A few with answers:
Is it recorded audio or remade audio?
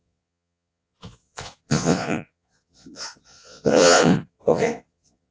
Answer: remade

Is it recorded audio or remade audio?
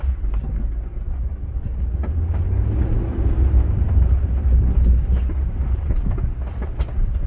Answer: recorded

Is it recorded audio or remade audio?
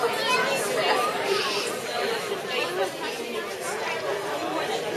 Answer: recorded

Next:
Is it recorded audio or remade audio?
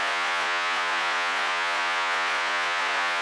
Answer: remade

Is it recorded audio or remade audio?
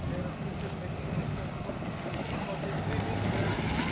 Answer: recorded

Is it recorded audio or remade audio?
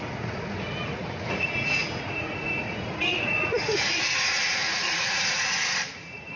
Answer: remade